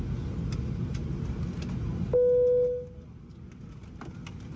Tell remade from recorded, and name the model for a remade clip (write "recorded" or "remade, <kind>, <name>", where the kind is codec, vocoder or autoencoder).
recorded